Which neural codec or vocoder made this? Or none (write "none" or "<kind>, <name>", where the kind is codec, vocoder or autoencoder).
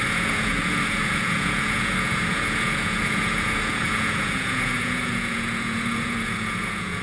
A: vocoder, Vocos